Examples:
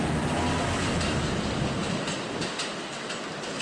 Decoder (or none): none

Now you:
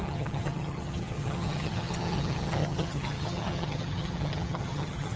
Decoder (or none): vocoder, HiFi-GAN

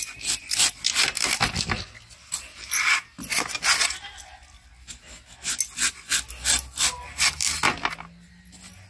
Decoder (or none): none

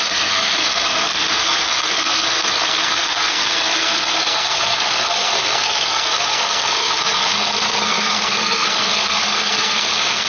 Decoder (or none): codec, SNAC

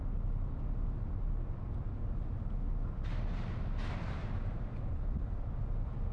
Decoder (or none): none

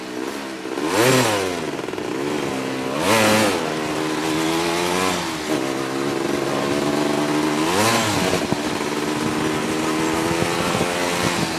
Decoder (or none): none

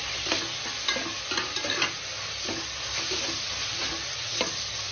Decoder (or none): none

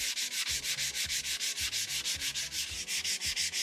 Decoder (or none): none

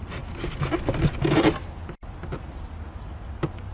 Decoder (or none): none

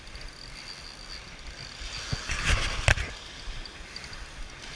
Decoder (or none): none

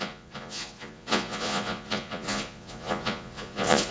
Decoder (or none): vocoder, Vocos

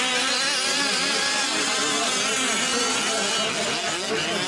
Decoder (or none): none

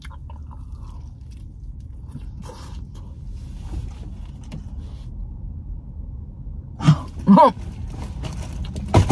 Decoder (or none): none